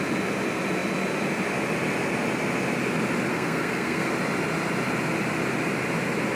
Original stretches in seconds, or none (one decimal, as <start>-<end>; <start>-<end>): 0.0-3.3; 4.1-6.3